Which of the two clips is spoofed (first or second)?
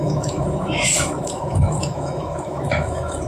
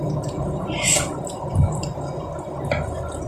first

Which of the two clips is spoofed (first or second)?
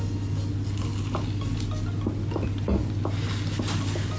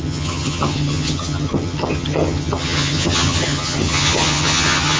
second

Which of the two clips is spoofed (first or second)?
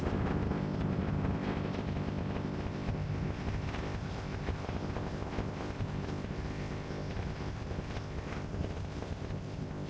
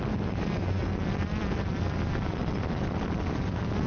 first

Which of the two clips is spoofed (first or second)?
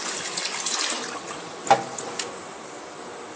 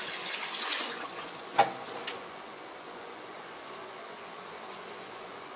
second